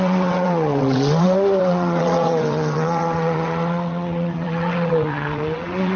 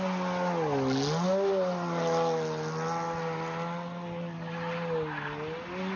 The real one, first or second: second